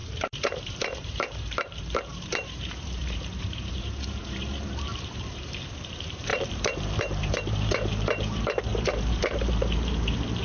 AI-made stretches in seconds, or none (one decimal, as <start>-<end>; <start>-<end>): 0.0-10.4